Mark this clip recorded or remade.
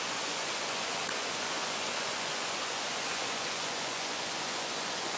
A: remade